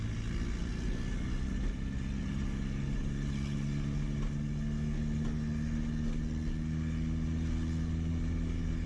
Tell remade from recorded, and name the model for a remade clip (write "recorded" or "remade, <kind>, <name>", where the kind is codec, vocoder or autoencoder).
recorded